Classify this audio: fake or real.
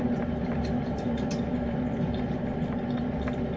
real